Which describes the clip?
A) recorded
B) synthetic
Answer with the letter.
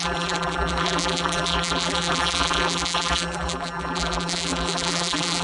B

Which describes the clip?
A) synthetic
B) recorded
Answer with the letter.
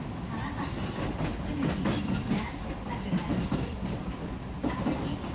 B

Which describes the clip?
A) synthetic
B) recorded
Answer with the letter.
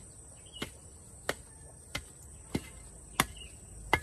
B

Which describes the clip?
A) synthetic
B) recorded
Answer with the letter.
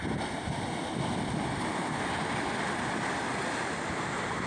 B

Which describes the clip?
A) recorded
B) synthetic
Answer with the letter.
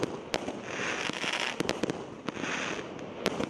A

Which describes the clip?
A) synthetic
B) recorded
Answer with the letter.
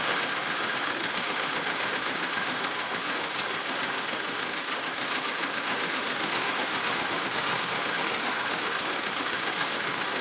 A